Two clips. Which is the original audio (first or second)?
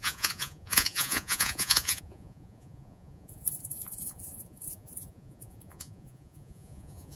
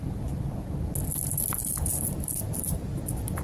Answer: second